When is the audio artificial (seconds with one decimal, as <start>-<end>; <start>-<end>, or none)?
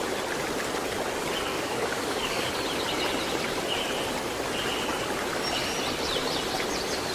1.5-2.5